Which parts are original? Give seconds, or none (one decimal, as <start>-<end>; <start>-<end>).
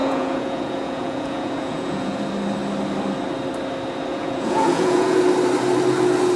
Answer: 2.2-4.1; 5.2-6.4